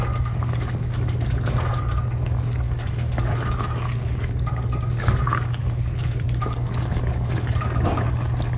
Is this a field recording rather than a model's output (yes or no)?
no